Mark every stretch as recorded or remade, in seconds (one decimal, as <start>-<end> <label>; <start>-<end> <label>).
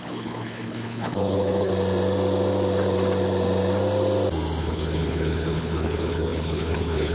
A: 0.0-1.7 remade; 1.7-4.6 recorded; 4.6-7.1 remade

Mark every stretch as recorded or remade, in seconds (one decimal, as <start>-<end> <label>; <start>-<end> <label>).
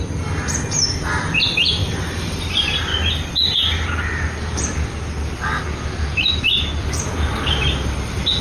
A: 0.0-1.8 recorded; 1.8-2.4 remade; 2.4-8.4 recorded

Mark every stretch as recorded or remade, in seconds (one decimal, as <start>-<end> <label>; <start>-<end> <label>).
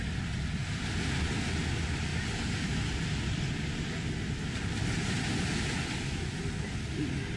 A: 0.0-7.4 recorded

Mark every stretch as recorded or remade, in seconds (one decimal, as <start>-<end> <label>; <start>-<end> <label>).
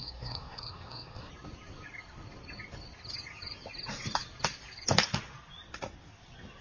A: 0.0-1.3 remade; 1.3-6.6 recorded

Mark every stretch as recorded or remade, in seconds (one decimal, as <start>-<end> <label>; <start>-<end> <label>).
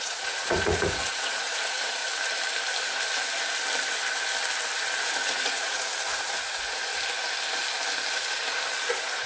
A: 0.0-2.0 remade; 2.0-5.0 recorded; 5.0-6.9 remade; 6.9-8.9 recorded; 8.9-9.3 remade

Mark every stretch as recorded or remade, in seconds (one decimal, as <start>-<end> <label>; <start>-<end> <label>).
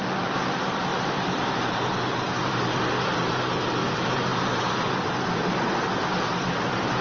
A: 0.0-7.0 remade